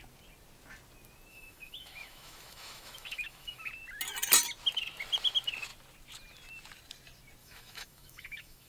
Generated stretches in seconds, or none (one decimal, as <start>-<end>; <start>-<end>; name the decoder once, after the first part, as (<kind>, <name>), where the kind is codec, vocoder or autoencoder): 1.3-3.7 (autoencoder, DAC-VAE); 7.4-8.7